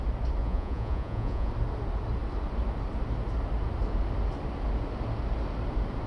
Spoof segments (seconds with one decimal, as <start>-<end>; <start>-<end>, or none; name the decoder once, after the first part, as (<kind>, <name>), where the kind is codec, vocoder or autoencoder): 0.4-1.5 (vocoder, Vocos)